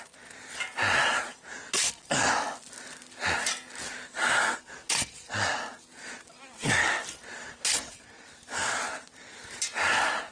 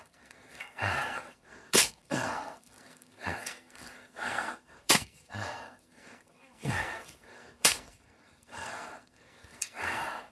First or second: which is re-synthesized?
second